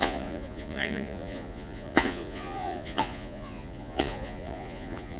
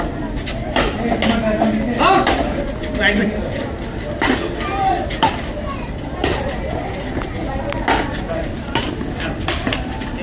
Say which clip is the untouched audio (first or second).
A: second